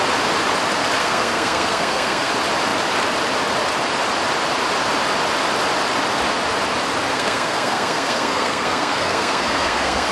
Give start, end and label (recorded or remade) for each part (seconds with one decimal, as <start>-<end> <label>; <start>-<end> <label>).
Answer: 0.0-1.0 recorded; 1.0-2.3 remade; 2.3-7.1 recorded; 7.1-10.1 remade